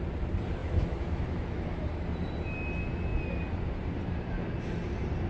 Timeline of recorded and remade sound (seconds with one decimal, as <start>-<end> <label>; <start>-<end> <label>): 0.0-0.6 recorded; 0.6-1.9 remade; 1.9-5.3 recorded